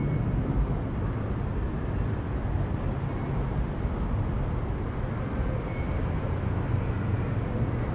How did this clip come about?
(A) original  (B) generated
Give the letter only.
A